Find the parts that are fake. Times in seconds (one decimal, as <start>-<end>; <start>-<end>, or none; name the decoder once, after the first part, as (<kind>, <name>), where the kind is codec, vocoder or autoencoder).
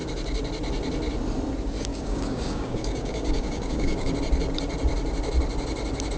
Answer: 1.9-4.1 (codec, DAC)